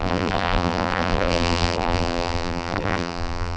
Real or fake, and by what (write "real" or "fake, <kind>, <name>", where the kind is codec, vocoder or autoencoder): fake, vocoder, BigVGAN v2